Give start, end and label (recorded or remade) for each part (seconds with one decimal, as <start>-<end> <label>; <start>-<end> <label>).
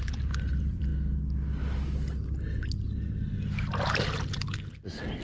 0.0-0.9 remade; 0.9-4.0 recorded; 4.0-5.2 remade